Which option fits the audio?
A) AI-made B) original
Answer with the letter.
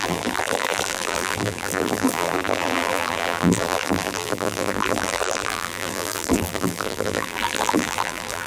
A